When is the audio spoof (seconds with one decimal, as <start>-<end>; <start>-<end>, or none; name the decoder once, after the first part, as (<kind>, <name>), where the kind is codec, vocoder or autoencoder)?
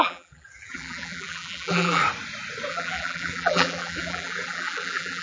0.0-2.0 (vocoder, BigVGAN v2); 2.7-5.2